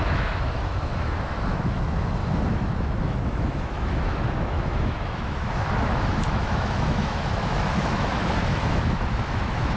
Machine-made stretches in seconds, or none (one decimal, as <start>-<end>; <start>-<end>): 0.0-9.8